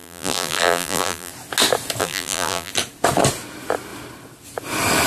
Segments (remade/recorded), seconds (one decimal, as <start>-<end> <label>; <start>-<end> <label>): 0.0-1.3 remade; 1.3-2.0 recorded; 2.0-2.7 remade; 2.7-5.1 recorded